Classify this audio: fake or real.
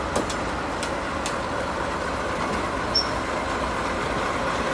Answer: real